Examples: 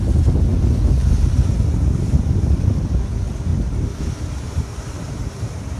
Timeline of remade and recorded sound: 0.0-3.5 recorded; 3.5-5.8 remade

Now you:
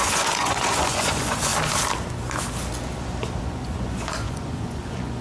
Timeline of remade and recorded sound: 0.0-1.5 remade; 1.5-3.4 recorded; 3.4-5.2 remade

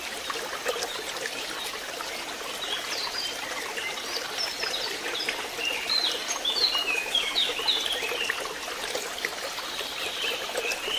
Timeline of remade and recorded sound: 0.0-6.8 recorded; 6.8-7.6 remade; 7.6-11.0 recorded